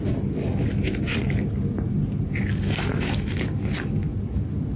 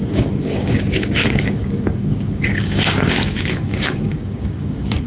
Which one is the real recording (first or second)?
first